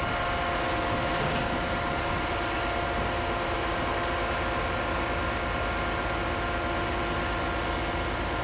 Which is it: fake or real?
real